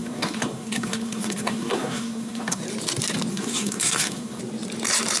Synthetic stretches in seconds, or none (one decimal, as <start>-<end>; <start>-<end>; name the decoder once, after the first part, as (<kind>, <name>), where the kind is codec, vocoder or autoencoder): 0.0-2.6 (codec, SNAC); 3.3-4.4